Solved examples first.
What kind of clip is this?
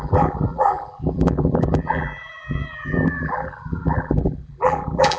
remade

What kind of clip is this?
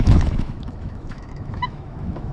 remade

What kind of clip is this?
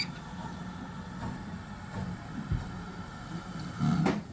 recorded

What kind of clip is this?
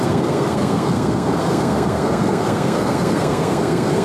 remade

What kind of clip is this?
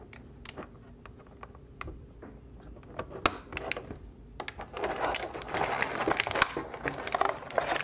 recorded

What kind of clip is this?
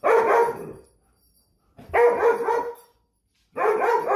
recorded